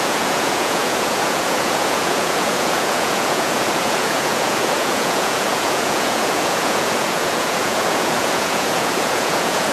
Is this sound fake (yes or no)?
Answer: yes